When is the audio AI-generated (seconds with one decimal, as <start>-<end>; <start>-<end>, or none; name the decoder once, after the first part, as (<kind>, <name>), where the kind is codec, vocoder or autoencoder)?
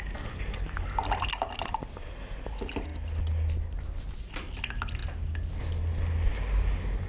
none